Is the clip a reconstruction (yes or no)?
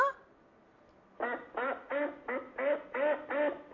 no